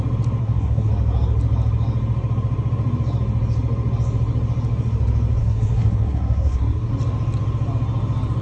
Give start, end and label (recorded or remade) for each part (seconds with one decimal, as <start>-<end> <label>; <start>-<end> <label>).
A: 0.0-0.4 recorded; 0.4-0.9 remade; 0.9-5.4 recorded; 5.4-6.9 remade; 6.9-8.4 recorded